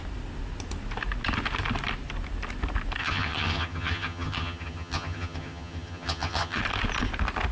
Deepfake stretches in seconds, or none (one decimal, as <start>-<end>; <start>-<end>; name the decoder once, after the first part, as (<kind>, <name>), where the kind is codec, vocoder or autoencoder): 3.0-6.6 (vocoder, HiFi-GAN)